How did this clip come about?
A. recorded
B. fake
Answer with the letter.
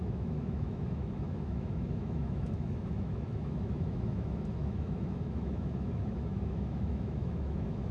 B